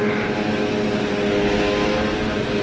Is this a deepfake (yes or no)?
no